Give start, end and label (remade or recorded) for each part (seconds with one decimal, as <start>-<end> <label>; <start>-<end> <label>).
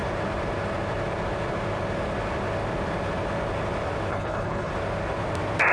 0.0-4.1 recorded; 4.1-4.7 remade; 4.7-5.7 recorded